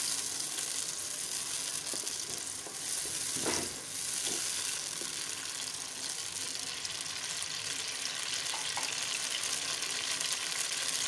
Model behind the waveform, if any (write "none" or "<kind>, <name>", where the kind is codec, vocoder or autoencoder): none